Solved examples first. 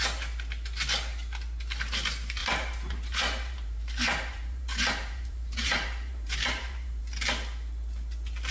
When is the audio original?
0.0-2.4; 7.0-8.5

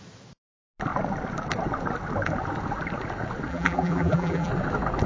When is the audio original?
0.0-3.5; 4.5-5.1

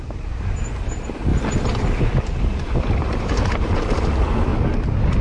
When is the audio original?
1.3-2.2; 4.5-5.2

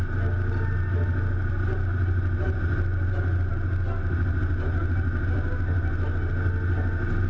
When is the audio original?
0.0-7.3

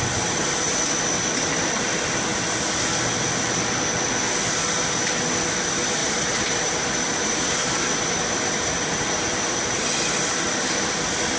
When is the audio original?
0.0-6.0; 10.7-11.4

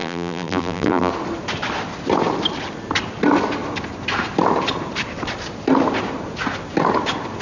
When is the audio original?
1.1-7.4

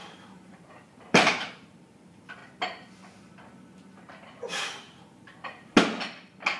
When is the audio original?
2.4-6.6

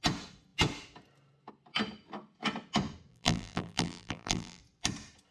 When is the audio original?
0.0-3.1; 4.6-5.3